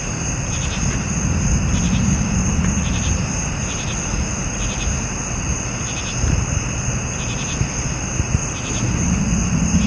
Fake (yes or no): no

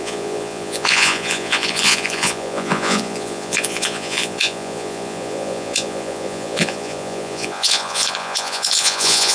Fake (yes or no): yes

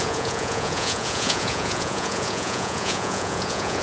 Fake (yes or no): yes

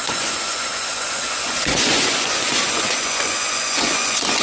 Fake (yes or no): yes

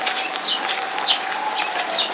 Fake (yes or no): no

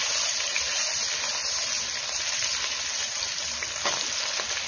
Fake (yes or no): no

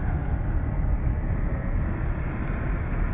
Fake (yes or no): no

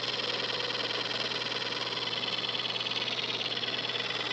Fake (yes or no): no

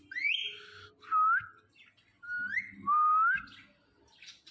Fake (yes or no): no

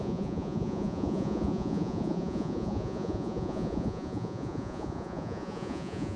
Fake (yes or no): yes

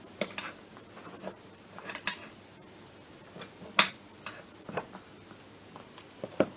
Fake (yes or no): no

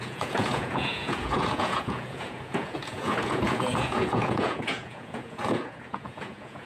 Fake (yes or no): yes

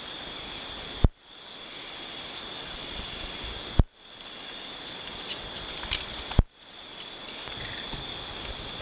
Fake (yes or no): no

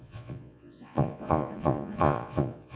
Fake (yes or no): yes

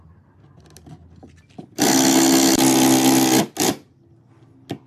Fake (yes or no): no